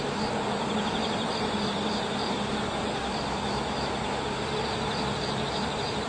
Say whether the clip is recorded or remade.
remade